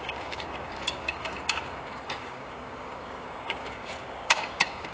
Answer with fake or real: fake